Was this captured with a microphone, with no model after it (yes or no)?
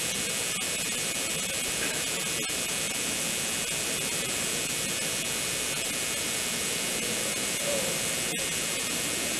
yes